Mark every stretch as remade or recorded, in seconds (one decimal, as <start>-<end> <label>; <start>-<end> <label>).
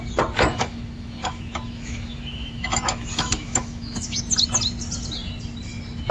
0.0-0.5 recorded; 0.5-4.2 remade; 4.2-6.1 recorded